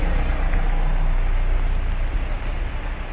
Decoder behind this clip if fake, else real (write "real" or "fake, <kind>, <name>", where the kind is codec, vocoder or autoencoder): real